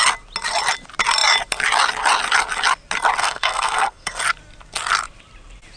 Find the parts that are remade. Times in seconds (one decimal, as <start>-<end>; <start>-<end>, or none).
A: 3.2-4.2

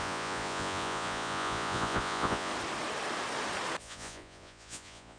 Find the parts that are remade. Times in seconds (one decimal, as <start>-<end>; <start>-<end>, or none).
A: 0.0-2.5; 3.8-5.2